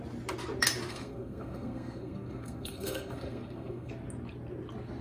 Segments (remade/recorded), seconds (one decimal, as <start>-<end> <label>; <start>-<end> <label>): 0.0-0.9 recorded; 0.9-3.9 remade; 3.9-5.0 recorded